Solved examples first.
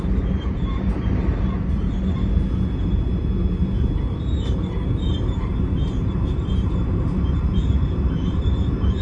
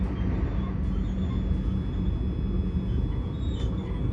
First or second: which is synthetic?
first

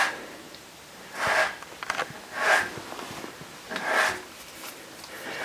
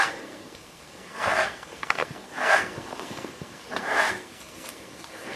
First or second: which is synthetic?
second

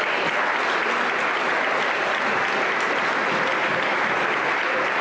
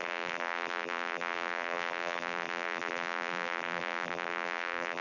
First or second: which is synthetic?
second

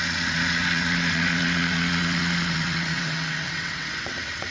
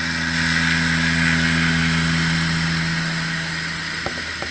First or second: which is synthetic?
first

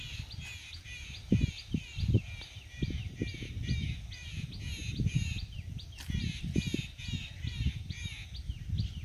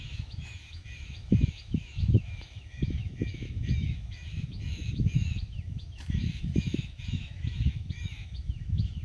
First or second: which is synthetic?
second